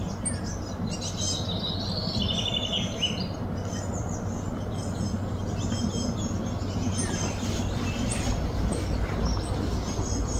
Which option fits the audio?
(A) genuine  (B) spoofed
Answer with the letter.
A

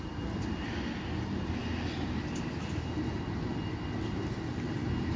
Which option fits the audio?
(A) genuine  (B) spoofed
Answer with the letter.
A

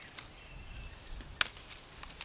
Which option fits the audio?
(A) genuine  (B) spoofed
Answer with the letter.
A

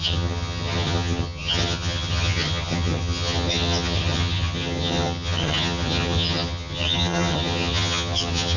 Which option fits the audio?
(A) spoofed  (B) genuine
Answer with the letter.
A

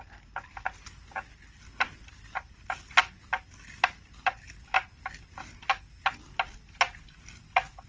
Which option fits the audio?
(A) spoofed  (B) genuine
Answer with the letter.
B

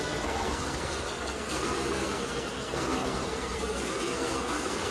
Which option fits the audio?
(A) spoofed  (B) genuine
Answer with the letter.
A